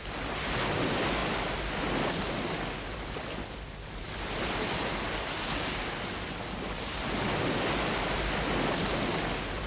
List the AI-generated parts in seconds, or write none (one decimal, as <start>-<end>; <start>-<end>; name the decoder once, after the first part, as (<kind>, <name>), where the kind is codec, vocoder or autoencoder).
none